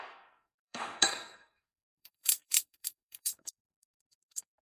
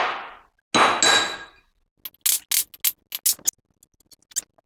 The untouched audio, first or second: second